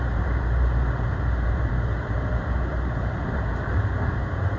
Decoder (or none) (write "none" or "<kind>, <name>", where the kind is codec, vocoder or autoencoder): vocoder, BigVGAN v2